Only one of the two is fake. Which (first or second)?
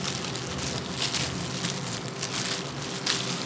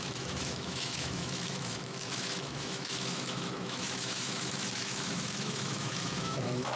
second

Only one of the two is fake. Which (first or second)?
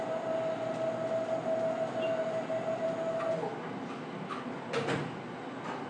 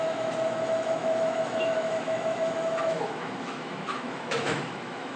second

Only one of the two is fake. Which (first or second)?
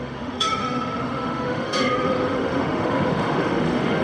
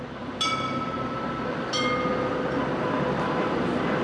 first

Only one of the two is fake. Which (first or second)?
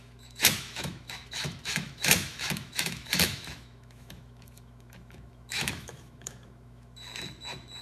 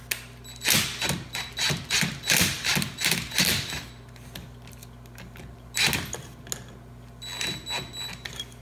first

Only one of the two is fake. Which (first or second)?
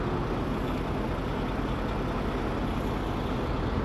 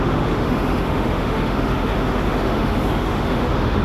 second